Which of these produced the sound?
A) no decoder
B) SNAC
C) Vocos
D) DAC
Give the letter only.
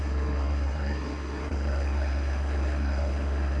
B